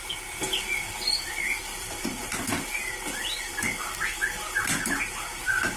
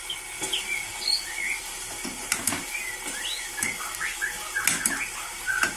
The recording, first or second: second